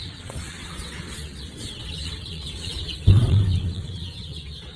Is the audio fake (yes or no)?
yes